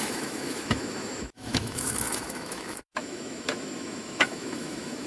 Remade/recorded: remade